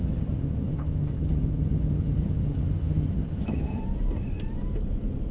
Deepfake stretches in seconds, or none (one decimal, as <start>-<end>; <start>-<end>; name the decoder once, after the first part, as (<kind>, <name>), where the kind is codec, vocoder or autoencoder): 0.0-3.8 (vocoder, HiFi-GAN)